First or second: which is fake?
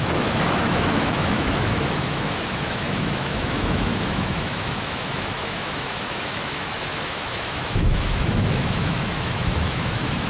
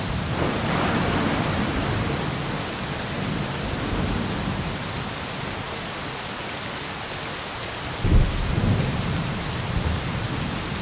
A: first